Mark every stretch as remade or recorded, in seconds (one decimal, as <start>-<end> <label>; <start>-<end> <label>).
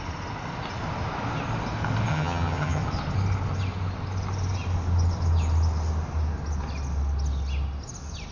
0.0-2.1 recorded; 2.1-2.8 remade; 2.8-8.3 recorded